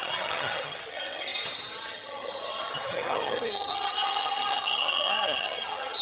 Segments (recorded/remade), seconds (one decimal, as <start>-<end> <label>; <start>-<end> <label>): 0.0-6.0 remade

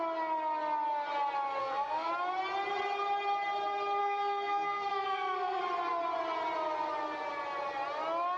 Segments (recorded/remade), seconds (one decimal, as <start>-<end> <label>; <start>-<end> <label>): 0.0-1.6 recorded; 1.6-2.1 remade; 2.1-4.0 recorded; 4.0-5.6 remade; 5.6-8.4 recorded

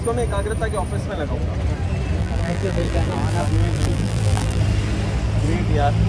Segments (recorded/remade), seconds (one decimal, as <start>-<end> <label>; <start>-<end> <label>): 0.0-2.2 recorded; 2.2-4.6 remade; 4.6-6.1 recorded

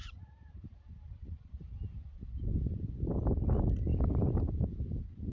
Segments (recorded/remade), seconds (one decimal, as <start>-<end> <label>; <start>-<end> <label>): 0.0-3.2 remade; 3.2-3.9 recorded; 3.9-4.4 remade; 4.4-5.3 recorded

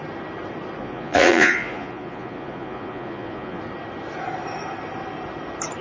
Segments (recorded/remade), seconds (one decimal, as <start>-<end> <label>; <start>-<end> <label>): 0.0-0.8 recorded; 0.8-3.6 remade; 3.6-5.8 recorded

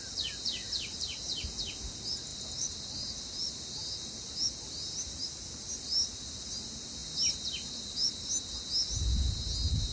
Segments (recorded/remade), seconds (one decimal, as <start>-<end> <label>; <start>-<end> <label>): 0.0-2.3 recorded; 2.3-3.3 remade; 3.3-9.9 recorded

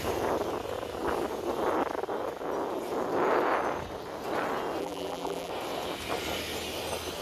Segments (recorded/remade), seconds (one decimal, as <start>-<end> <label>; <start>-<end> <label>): 0.0-4.8 recorded; 4.8-5.5 remade; 5.5-7.2 recorded

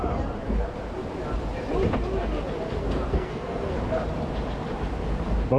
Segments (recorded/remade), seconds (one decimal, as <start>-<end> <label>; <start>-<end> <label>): 0.0-2.8 recorded; 2.8-3.7 remade; 3.7-5.6 recorded